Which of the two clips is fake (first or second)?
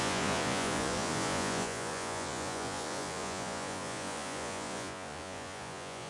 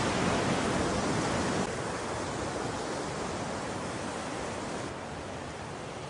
first